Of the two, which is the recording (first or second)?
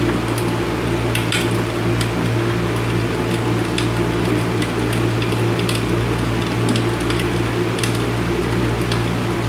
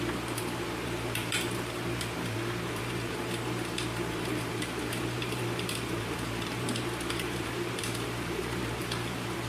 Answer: first